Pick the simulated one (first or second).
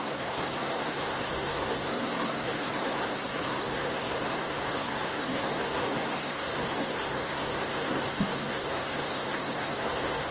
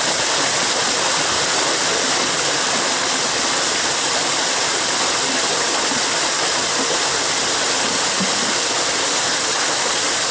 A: first